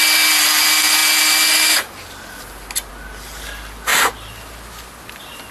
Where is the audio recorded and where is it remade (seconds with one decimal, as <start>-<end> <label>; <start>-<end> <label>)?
0.0-5.5 recorded